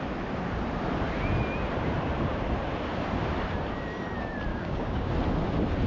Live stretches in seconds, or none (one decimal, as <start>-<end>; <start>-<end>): 0.0-4.5; 5.1-5.9